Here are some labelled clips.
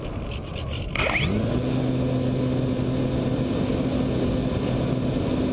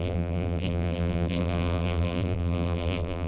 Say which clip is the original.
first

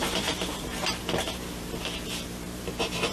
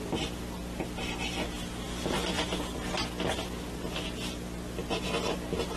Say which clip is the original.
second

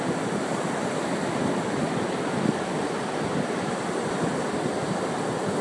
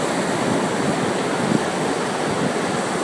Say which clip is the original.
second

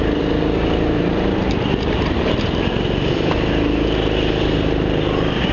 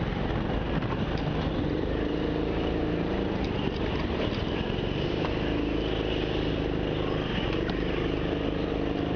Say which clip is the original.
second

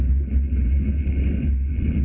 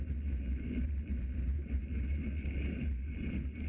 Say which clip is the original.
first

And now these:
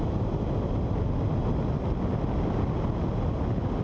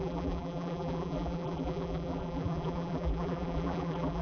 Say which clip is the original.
first